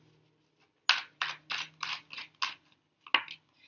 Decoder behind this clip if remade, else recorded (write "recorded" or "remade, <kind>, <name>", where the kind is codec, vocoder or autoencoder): recorded